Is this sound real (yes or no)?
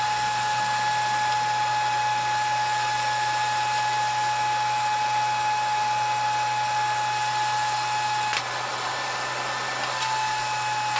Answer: yes